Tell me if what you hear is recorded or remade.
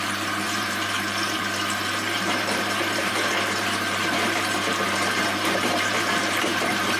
remade